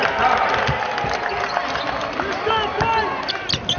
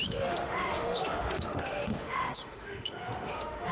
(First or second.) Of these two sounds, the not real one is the second